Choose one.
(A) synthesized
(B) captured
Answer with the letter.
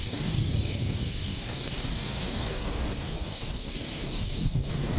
A